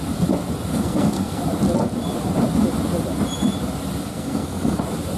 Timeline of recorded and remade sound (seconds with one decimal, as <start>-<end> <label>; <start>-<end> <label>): 0.0-0.7 recorded; 0.7-1.4 remade; 1.4-4.1 recorded; 4.1-4.8 remade; 4.8-5.2 recorded